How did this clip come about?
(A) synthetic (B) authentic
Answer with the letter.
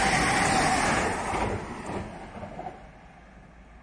B